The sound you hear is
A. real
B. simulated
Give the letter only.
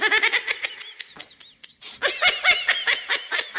A